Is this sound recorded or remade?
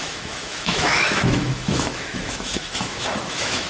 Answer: remade